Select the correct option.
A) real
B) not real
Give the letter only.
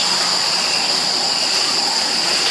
A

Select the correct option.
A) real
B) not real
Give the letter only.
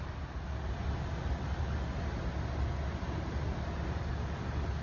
A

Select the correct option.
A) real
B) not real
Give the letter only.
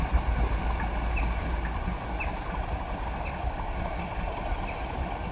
A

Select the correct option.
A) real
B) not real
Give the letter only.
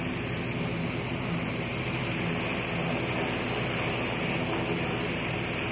A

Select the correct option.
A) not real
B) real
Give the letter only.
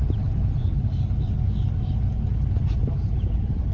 B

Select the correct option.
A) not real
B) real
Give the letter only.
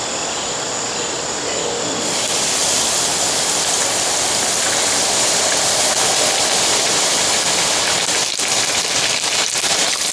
B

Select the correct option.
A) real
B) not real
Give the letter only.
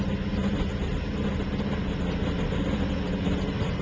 A